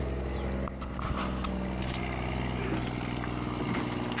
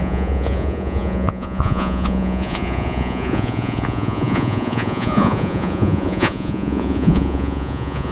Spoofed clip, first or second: second